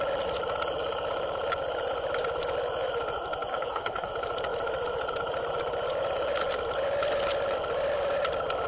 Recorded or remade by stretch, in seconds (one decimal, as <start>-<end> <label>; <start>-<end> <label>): 0.0-3.5 recorded; 3.5-4.1 remade; 4.1-8.7 recorded